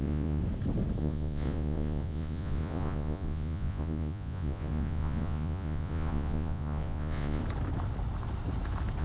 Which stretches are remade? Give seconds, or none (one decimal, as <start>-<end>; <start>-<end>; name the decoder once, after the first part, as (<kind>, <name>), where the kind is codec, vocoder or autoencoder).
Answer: 0.0-0.4 (vocoder, Vocos); 1.0-7.4